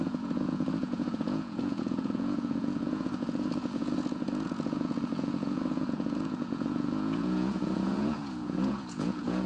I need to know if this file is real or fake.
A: fake